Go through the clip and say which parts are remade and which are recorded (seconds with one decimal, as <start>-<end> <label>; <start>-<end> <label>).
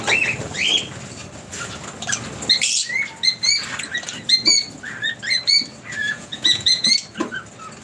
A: 0.0-6.0 recorded; 6.0-6.9 remade; 6.9-7.8 recorded